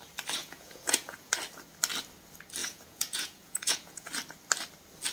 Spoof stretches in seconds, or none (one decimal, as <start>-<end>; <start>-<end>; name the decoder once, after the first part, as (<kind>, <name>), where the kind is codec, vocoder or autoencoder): 0.4-1.3 (vocoder, Vocos); 2.6-4.1